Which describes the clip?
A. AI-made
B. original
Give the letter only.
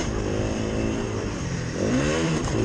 A